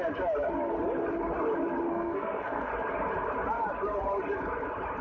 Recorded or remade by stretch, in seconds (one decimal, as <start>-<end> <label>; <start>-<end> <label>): 0.0-1.9 recorded; 1.9-2.7 remade; 2.7-5.0 recorded